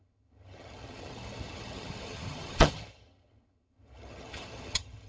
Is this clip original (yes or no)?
no